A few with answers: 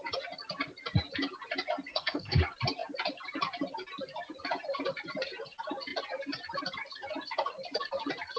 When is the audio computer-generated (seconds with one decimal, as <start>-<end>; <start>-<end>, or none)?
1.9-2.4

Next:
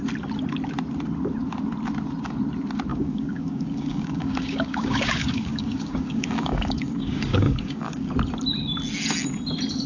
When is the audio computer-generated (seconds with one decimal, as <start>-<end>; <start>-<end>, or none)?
2.9-8.1

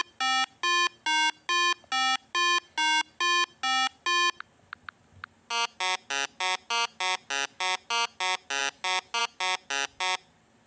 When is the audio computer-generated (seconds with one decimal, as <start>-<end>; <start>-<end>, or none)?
none